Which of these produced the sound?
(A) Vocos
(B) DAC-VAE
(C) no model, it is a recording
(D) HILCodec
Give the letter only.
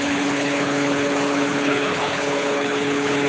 D